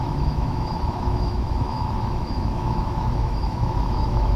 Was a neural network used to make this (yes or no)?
yes